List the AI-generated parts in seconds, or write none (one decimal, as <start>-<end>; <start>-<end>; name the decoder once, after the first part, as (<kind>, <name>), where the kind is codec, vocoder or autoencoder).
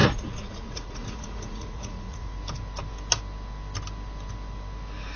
0.0-2.4 (vocoder, Vocos)